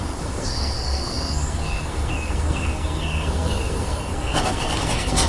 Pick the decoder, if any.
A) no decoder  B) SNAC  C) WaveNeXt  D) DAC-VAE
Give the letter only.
B